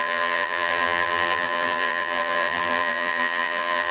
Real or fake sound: fake